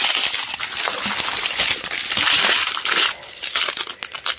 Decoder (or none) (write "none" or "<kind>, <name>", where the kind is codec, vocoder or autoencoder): none